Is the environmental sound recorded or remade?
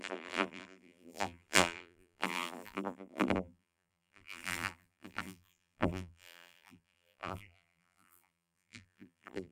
remade